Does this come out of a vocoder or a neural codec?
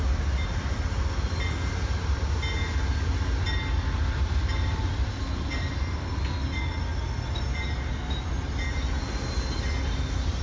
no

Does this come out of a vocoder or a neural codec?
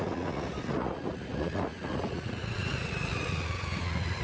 yes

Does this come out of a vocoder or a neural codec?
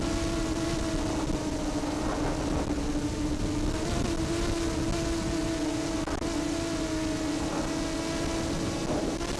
no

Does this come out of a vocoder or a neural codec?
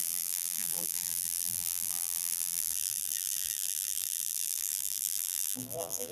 yes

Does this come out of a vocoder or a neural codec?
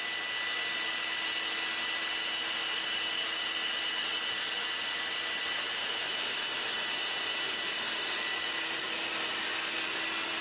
no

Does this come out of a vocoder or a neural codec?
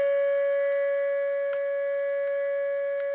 no